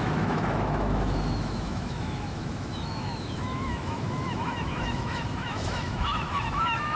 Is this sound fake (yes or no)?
yes